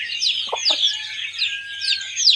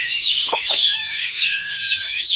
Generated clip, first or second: second